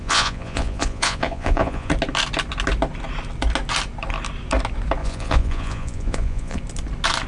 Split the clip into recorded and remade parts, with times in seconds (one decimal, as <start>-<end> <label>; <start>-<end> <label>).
0.0-1.9 remade; 1.9-5.0 recorded; 5.0-6.6 remade; 6.6-7.3 recorded